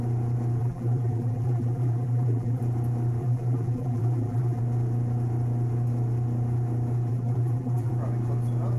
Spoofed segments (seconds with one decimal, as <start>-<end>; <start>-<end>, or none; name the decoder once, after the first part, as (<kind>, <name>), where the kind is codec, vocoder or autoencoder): 0.6-2.6 (vocoder, BigVGAN v2); 3.2-4.6; 7.1-7.9